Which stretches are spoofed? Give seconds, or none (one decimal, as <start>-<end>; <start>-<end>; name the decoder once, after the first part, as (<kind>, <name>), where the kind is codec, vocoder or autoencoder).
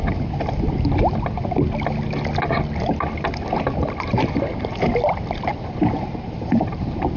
5.5-6.7 (vocoder, BigVGAN v2)